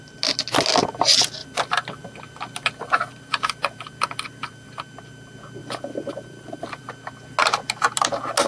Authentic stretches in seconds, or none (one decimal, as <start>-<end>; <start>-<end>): 0.0-1.4; 2.0-2.6; 4.7-5.6; 6.9-8.5

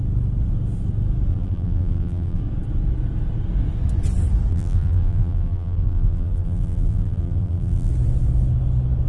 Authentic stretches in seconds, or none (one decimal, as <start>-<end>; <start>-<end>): 0.0-1.3; 2.4-4.5; 7.9-9.1

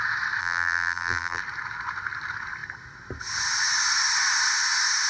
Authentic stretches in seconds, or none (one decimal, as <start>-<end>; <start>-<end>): 0.0-0.4; 1.4-5.1

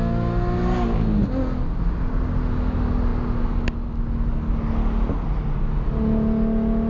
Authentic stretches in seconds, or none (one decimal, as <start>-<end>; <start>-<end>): 0.0-6.9

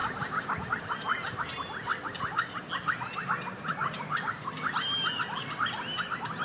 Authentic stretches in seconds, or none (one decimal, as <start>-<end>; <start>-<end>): 0.8-3.7; 4.6-6.4

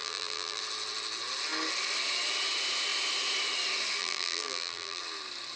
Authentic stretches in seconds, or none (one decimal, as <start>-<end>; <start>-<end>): 0.6-4.0; 5.0-5.6

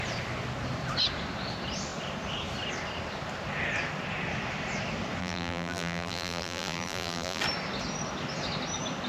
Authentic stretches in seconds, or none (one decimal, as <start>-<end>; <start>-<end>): 0.0-5.2; 7.4-9.1

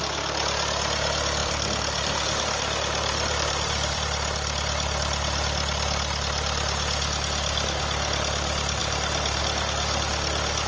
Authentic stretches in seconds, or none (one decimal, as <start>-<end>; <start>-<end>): 0.0-1.4; 4.0-8.8; 9.4-10.7